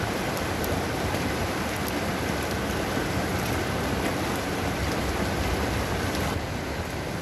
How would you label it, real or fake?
real